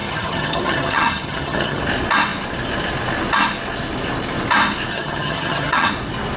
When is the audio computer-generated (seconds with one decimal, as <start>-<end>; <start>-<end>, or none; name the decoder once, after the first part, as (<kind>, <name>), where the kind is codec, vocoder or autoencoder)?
0.0-1.8 (vocoder, HiFi-GAN); 4.9-5.9